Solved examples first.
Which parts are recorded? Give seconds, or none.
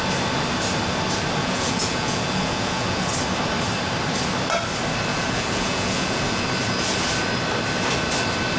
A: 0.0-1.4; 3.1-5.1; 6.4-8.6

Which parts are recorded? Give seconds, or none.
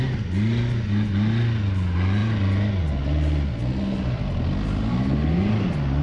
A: 0.0-6.0